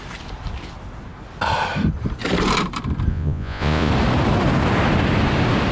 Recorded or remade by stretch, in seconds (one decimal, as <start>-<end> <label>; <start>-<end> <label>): 0.0-3.1 recorded; 3.1-3.9 remade; 3.9-5.7 recorded